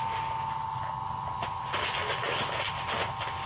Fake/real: real